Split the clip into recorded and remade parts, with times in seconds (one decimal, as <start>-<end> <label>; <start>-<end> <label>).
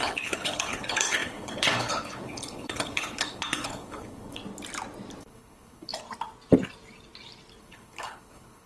0.0-4.4 remade; 4.4-5.2 recorded; 5.2-5.9 remade; 5.9-7.6 recorded; 7.6-8.7 remade